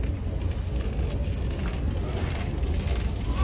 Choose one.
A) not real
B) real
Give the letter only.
B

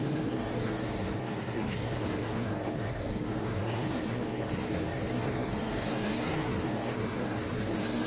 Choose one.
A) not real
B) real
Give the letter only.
A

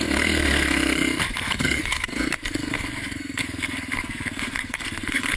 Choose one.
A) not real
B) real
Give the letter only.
A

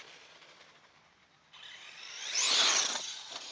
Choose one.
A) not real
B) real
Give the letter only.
A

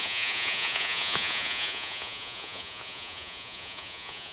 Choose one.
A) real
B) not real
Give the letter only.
B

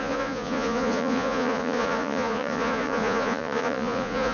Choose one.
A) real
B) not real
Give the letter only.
B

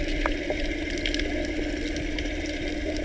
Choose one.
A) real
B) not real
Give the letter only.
A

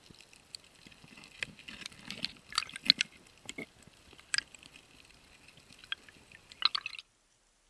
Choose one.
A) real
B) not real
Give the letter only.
A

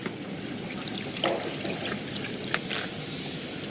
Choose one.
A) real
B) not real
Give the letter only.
A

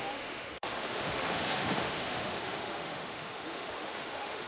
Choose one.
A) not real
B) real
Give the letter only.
A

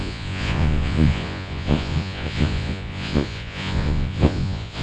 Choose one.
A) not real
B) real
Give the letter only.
A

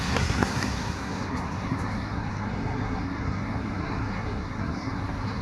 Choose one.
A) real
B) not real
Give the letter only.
B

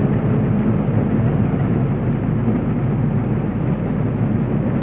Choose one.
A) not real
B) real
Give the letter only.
B